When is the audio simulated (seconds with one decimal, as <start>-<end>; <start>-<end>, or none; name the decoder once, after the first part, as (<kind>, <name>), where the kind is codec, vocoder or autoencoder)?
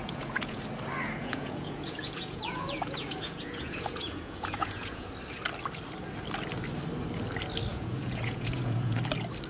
0.0-0.6 (vocoder, Vocos); 1.2-5.1; 7.7-9.0